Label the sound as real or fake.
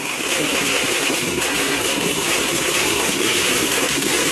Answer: fake